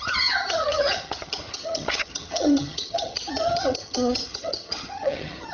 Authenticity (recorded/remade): remade